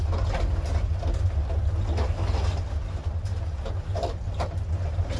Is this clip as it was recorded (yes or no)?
yes